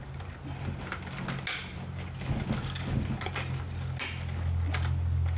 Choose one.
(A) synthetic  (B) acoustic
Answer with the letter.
B